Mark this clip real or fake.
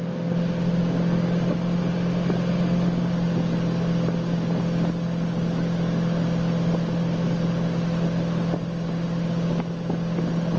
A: real